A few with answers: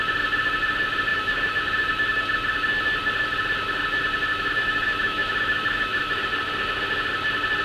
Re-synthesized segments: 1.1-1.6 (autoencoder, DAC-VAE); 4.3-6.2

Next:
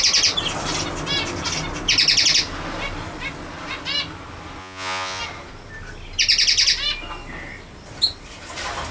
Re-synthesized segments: 4.6-5.2 (vocoder, Vocos)

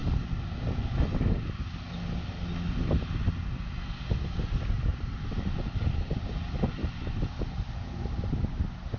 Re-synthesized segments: 4.9-6.3 (vocoder, BigVGAN v2); 6.8-7.4

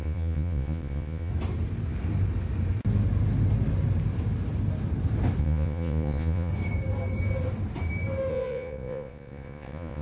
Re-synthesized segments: 0.0-1.3 (vocoder, Vocos); 5.4-6.5; 8.3-10.0

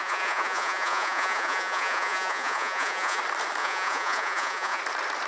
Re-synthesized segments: 0.0-3.2 (vocoder, Vocos); 3.6-4.8

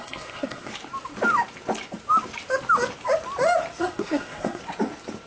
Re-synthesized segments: 0.0-0.7 (codec, SNAC); 3.8-4.6

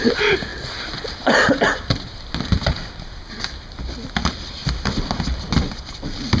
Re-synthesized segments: 4.2-5.2 (vocoder, BigVGAN v2)